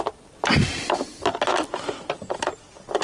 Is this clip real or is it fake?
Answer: real